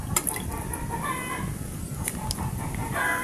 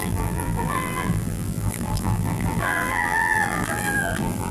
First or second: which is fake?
second